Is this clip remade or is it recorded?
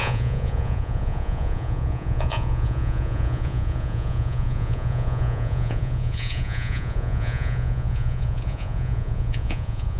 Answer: remade